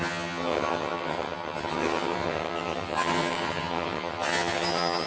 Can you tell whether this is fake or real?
fake